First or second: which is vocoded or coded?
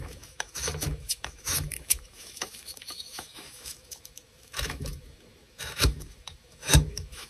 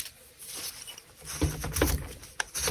first